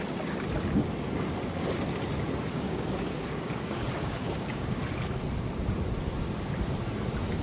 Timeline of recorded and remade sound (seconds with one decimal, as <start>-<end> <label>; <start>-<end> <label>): 0.0-2.5 recorded; 2.5-4.8 remade; 4.8-7.4 recorded